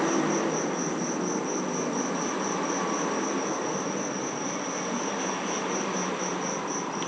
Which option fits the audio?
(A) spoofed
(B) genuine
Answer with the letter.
B